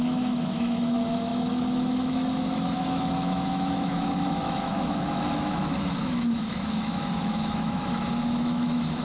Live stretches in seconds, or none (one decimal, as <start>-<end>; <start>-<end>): none

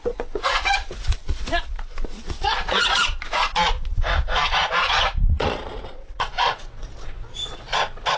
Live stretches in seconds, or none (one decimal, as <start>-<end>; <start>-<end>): none